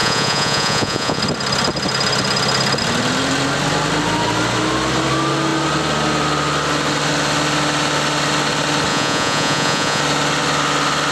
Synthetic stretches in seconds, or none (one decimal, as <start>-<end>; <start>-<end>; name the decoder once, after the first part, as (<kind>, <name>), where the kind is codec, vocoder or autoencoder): 0.0-1.2 (vocoder, Vocos); 8.9-10.0